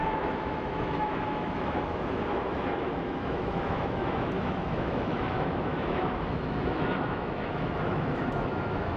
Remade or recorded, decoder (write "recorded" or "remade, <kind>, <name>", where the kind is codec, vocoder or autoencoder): remade, autoencoder, DAC-VAE